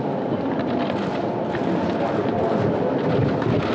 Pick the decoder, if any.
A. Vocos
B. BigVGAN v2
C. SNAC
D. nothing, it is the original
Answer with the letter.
D